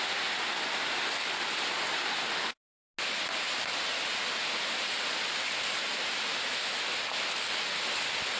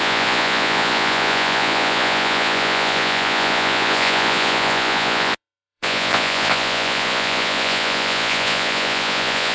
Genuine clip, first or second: first